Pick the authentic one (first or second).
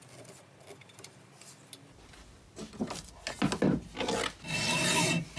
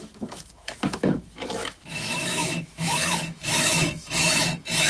first